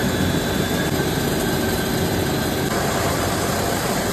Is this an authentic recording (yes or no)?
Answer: yes